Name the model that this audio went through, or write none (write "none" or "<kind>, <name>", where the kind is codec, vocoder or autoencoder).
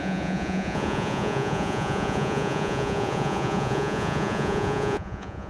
vocoder, Vocos